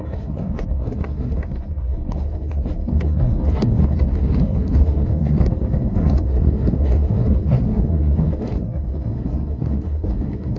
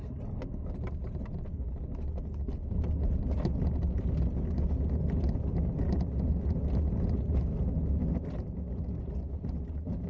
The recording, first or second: second